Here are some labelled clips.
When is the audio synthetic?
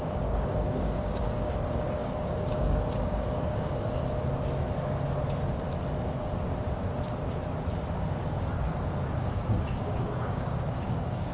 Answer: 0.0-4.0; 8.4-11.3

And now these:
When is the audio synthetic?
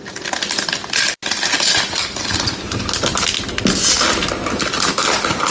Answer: none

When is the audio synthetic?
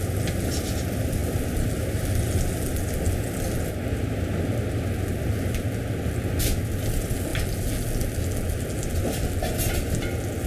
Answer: none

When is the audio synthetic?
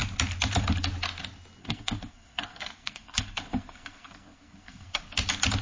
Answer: 1.6-5.0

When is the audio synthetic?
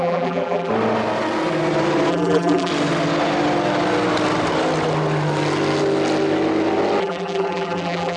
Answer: 0.0-0.7; 2.1-2.7; 7.0-8.2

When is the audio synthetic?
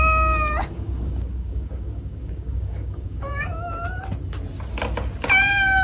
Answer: 0.6-3.7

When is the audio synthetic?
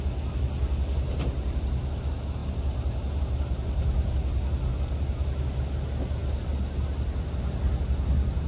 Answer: none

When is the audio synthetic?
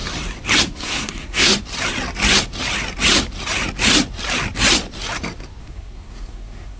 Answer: 0.6-1.5; 5.6-6.8